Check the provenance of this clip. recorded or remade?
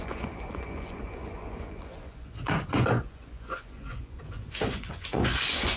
remade